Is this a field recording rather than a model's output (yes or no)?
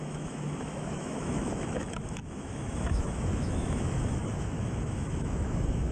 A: no